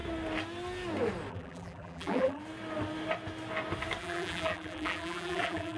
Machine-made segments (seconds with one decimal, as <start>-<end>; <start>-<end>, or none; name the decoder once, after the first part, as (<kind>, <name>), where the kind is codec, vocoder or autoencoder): 1.3-2.4 (vocoder, BigVGAN v2); 4.0-5.8